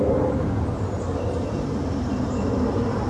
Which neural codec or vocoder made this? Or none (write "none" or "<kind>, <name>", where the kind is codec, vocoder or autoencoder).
none